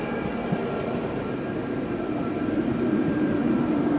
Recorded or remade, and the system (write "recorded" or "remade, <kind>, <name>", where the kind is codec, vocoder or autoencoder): remade, vocoder, BigVGAN v2